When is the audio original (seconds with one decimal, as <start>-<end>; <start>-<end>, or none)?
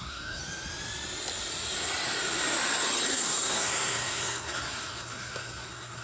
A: 0.4-3.1